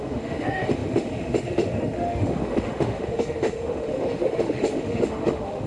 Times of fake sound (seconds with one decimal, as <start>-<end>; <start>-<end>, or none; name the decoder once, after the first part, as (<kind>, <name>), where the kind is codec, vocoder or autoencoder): 0.0-5.7 (autoencoder, DAC-VAE)

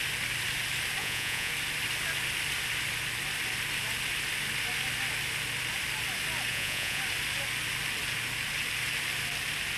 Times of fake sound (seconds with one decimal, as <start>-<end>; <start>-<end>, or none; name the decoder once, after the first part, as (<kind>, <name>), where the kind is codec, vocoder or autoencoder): 1.0-1.5 (vocoder, Vocos); 6.5-7.0

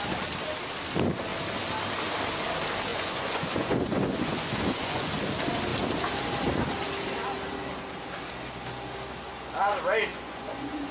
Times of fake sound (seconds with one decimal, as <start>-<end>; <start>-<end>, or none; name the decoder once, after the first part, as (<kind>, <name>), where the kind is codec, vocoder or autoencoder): 2.9-5.1 (vocoder, Vocos); 10.1-10.9

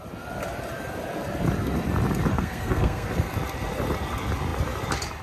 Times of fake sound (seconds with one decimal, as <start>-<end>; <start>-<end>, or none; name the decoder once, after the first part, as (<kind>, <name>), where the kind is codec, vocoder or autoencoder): 2.3-3.3 (codec, SNAC)